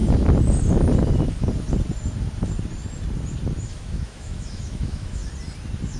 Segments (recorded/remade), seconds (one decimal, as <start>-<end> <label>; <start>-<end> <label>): 0.0-3.6 recorded; 3.6-5.2 remade; 5.2-6.0 recorded